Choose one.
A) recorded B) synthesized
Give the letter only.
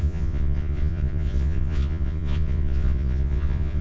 B